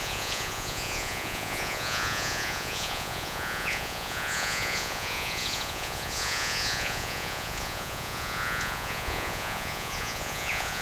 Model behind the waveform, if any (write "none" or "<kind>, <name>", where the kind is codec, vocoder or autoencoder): vocoder, Vocos